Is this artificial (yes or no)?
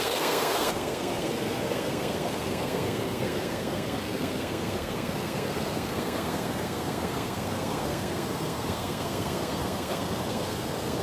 yes